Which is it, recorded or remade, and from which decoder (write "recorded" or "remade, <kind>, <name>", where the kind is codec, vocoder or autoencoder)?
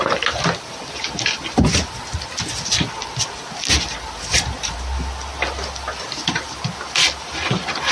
recorded